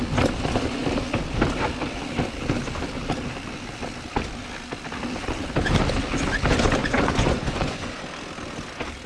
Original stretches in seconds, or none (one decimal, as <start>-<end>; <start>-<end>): 0.0-6.8; 8.0-9.1